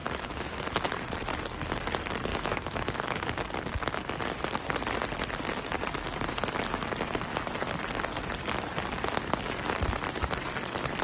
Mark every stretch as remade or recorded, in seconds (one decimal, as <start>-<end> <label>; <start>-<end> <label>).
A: 0.0-0.6 remade; 0.6-2.3 recorded; 2.3-3.3 remade; 3.3-11.0 recorded

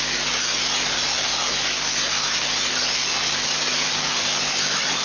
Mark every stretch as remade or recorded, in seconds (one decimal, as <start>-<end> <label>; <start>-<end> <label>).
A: 0.0-5.0 recorded